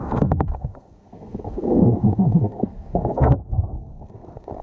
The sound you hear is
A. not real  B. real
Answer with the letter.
A